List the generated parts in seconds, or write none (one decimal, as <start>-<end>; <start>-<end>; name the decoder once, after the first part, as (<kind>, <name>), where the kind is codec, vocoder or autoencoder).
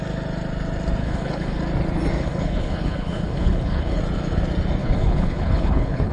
1.0-1.6 (codec, HILCodec); 2.2-4.0; 4.8-6.1